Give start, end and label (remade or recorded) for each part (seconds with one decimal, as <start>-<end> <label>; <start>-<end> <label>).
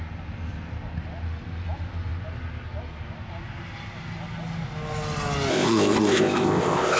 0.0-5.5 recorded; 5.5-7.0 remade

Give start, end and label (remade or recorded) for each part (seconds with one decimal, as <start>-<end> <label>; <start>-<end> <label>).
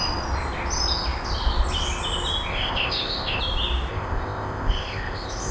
0.0-2.5 recorded; 2.5-3.4 remade; 3.4-3.9 recorded; 3.9-5.5 remade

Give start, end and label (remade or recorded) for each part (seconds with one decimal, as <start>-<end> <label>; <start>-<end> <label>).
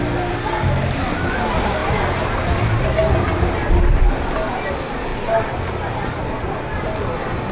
0.0-7.5 recorded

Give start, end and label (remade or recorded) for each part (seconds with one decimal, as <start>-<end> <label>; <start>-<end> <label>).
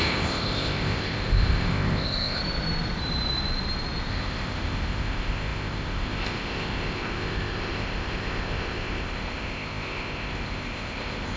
0.0-2.4 remade; 2.4-4.1 recorded; 4.1-11.4 remade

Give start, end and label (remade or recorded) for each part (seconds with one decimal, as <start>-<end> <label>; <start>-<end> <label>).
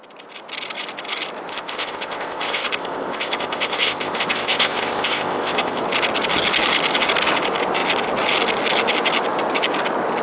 0.0-1.5 recorded; 1.5-5.8 remade; 5.8-10.2 recorded